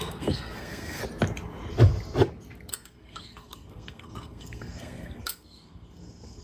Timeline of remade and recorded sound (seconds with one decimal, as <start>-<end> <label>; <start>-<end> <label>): 0.0-1.0 remade; 1.0-2.7 recorded; 2.7-6.4 remade